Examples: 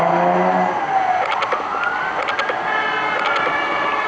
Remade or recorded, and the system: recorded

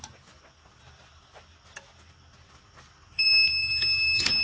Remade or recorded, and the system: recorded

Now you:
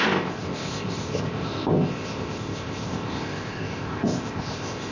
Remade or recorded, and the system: remade, codec, ZipCodec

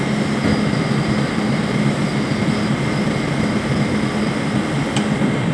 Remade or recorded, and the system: recorded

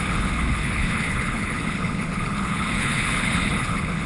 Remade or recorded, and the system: remade, codec, HILCodec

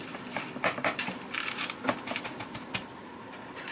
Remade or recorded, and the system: recorded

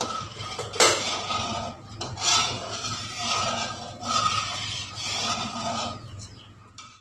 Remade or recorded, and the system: remade, vocoder, Vocos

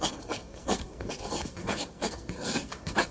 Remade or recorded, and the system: remade, codec, SNAC